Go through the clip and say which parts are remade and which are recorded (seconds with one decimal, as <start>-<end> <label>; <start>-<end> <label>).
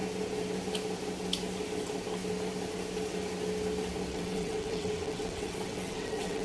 0.0-4.1 recorded; 4.1-6.4 remade